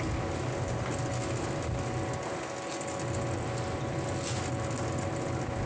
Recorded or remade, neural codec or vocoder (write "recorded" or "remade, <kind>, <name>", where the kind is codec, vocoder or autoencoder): recorded